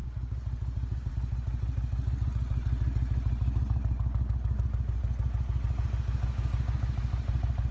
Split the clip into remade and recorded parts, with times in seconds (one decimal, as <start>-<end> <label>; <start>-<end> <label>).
0.0-7.7 recorded